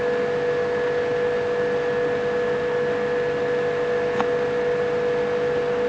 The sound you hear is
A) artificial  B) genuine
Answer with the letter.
B